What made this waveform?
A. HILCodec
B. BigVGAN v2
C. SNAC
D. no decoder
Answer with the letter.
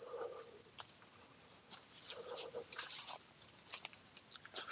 D